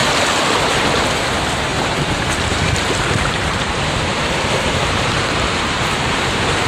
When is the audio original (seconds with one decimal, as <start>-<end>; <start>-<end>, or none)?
0.0-0.5